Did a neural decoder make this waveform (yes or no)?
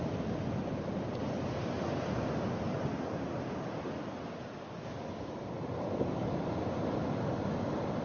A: no